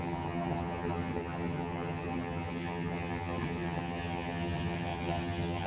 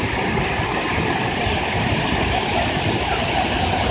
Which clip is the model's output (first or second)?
first